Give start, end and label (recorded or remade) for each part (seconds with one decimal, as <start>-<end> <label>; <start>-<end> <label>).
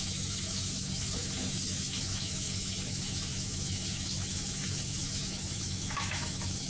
0.0-6.7 remade